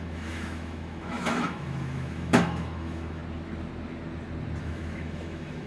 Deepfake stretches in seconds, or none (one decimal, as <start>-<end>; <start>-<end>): 0.0-3.2; 4.6-5.7